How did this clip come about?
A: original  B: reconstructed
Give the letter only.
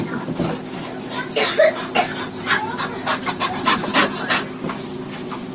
A